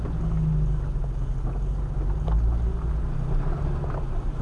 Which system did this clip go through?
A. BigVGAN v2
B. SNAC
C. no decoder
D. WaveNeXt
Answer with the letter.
C